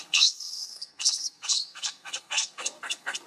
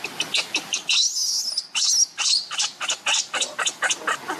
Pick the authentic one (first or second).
second